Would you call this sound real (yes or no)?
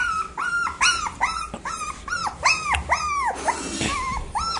yes